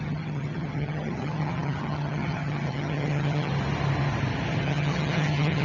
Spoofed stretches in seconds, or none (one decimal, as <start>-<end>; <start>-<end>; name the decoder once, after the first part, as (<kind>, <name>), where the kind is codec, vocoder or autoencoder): 0.0-3.5 (vocoder, HiFi-GAN); 4.6-5.6